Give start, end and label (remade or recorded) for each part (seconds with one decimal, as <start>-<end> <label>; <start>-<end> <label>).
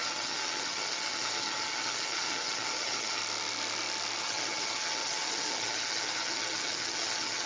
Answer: 0.0-3.2 remade; 3.2-4.2 recorded; 4.2-7.5 remade